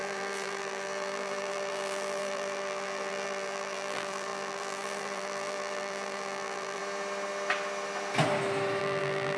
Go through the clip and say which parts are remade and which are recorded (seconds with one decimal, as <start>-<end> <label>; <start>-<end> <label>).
0.0-6.8 remade; 6.8-8.8 recorded; 8.8-9.4 remade